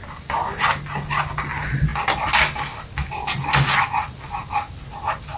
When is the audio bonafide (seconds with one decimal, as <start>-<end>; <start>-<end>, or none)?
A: 0.0-5.4